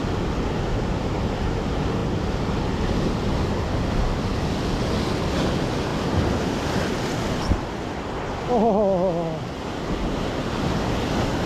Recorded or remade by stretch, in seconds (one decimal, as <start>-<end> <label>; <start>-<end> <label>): 0.0-11.5 recorded